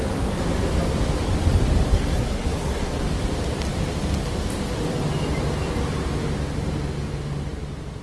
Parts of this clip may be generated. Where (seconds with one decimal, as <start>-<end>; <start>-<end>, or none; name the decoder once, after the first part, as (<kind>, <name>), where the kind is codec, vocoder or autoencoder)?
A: 1.9-3.0 (codec, SNAC)